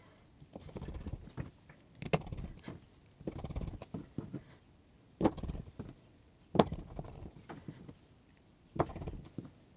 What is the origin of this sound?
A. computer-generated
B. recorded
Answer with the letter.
B